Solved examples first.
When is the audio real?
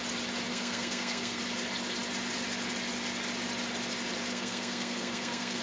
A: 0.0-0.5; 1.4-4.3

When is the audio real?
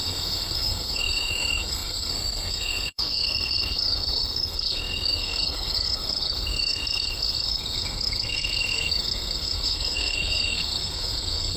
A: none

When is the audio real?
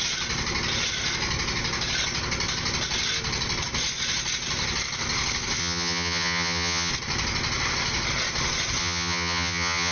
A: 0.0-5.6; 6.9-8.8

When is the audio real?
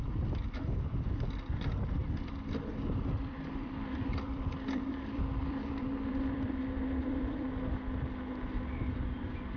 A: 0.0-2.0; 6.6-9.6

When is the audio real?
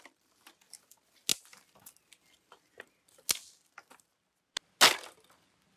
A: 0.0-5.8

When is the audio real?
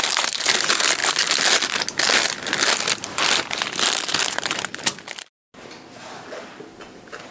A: 1.0-4.2; 4.7-6.0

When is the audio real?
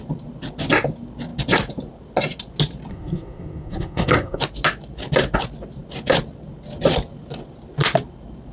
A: 0.0-2.9; 4.4-8.5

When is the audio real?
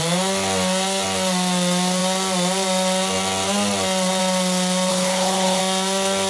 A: 0.0-4.9; 5.6-6.3